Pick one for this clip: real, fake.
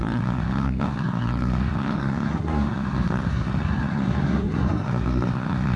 fake